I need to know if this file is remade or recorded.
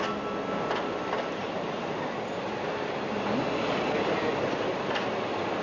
recorded